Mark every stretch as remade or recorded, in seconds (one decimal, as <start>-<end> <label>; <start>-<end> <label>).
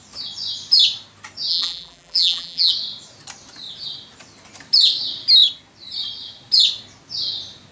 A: 0.0-1.5 recorded; 1.5-2.7 remade; 2.7-7.7 recorded